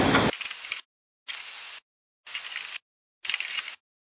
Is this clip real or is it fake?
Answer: real